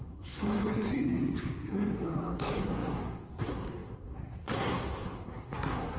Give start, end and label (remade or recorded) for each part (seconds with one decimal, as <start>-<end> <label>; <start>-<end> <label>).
0.0-6.0 remade